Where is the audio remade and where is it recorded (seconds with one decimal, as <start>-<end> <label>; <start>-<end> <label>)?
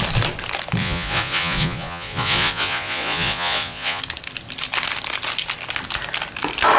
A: 0.0-0.8 recorded; 0.8-4.0 remade; 4.0-6.8 recorded